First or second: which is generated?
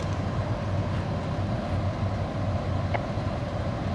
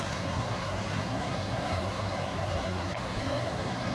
second